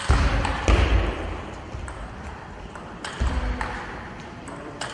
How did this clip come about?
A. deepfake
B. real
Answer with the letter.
A